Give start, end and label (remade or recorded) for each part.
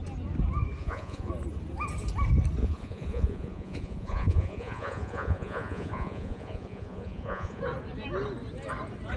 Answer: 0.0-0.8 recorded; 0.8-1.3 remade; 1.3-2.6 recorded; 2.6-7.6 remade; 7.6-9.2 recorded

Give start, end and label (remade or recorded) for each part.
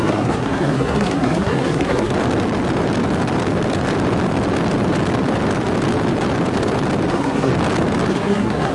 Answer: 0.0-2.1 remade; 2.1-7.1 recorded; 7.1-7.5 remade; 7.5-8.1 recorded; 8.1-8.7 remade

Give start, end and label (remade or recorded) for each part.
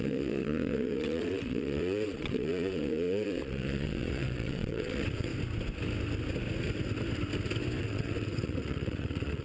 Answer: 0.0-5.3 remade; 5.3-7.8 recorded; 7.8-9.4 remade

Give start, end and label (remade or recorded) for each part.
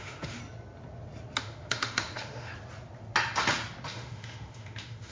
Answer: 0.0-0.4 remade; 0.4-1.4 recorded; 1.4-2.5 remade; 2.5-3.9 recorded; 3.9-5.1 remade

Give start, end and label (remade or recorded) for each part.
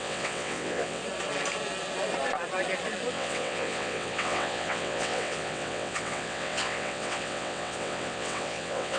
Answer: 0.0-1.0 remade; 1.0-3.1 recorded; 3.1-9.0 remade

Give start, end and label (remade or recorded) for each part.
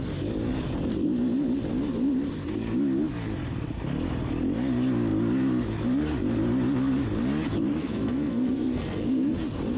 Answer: 0.0-7.7 recorded; 7.7-9.4 remade; 9.4-9.8 recorded